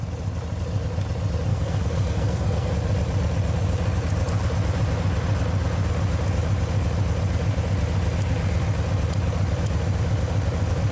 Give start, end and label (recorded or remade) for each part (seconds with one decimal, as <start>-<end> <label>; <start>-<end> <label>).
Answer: 0.0-1.5 recorded; 1.5-2.7 remade; 2.7-10.9 recorded